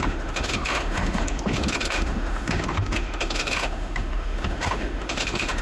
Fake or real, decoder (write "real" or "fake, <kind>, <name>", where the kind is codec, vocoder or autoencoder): fake, autoencoder, DAC-VAE